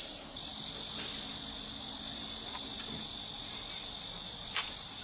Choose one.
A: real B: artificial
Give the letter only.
A